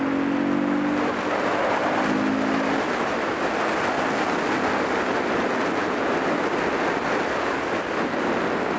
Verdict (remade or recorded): recorded